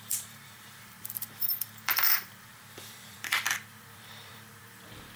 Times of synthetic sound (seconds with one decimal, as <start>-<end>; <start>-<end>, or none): 0.0-5.2